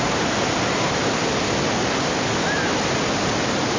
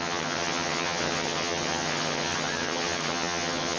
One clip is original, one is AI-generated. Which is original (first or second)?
first